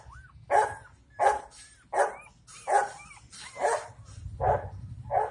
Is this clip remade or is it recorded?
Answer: recorded